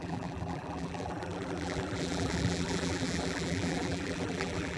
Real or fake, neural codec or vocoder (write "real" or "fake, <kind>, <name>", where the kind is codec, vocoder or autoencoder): fake, vocoder, BigVGAN v2